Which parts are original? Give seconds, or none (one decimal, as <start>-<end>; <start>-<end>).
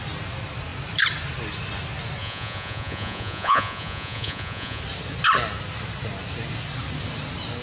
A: 0.0-2.2; 4.8-7.6